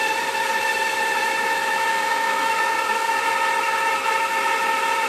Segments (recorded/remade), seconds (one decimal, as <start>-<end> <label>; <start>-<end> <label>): 0.0-1.9 recorded; 1.9-3.1 remade; 3.1-5.1 recorded

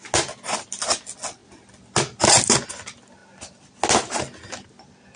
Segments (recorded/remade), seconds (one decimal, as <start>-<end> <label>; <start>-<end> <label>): 0.0-5.2 recorded

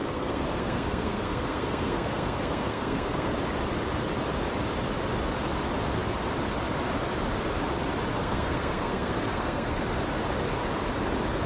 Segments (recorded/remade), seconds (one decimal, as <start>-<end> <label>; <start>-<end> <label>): 0.0-3.3 remade; 3.3-8.2 recorded; 8.2-9.8 remade; 9.8-11.5 recorded

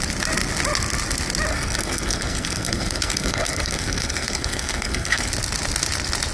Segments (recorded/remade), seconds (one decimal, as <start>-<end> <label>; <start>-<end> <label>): 0.0-1.5 recorded; 1.5-5.3 remade; 5.3-6.3 recorded

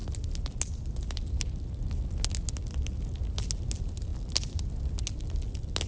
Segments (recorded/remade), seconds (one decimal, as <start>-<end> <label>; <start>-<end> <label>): 0.0-5.9 recorded

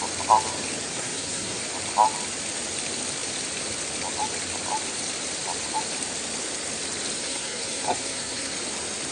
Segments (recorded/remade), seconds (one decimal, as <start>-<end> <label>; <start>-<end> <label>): 0.0-0.9 recorded; 0.9-1.6 remade; 1.6-7.2 recorded; 7.2-8.5 remade; 8.5-9.1 recorded